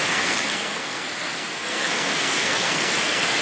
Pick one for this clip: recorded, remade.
remade